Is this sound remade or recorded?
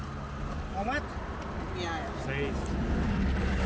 recorded